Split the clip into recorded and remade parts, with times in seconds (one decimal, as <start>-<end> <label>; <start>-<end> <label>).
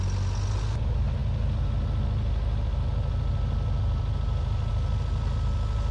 0.0-5.9 recorded